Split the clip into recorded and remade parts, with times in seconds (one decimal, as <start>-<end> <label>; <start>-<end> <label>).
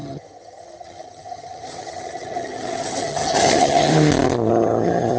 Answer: 0.0-3.9 remade; 3.9-4.5 recorded; 4.5-5.2 remade